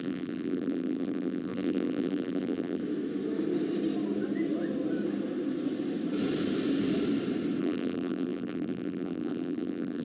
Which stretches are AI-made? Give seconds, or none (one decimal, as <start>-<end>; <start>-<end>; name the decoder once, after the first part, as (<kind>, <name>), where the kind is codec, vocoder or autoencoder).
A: 0.0-2.8 (vocoder, BigVGAN v2); 7.6-10.0